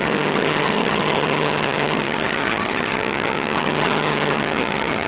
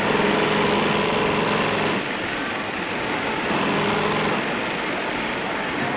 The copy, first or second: first